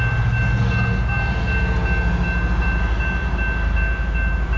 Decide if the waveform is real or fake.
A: real